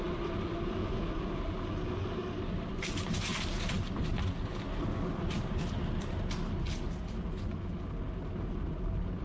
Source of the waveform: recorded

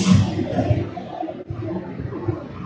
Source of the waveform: recorded